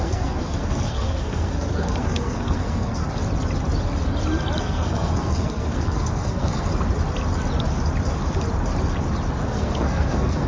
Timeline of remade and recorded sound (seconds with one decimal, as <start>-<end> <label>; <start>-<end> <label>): 0.0-3.0 remade; 3.0-4.6 recorded; 4.6-6.7 remade; 6.7-9.5 recorded; 9.5-10.5 remade